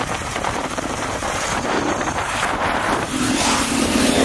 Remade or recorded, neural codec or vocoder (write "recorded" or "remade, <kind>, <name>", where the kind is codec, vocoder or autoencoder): remade, vocoder, BigVGAN v2